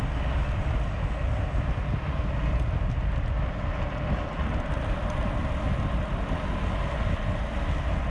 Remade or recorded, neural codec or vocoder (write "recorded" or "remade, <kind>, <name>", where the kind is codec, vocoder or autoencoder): recorded